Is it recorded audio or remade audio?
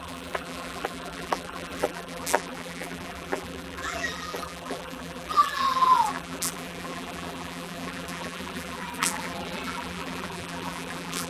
remade